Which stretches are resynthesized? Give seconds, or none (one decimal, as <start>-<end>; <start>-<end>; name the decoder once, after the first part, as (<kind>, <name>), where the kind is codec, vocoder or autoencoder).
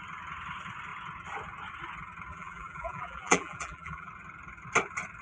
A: 2.3-4.1 (vocoder, BigVGAN v2)